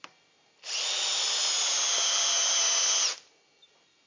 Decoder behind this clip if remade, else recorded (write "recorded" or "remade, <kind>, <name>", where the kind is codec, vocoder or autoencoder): recorded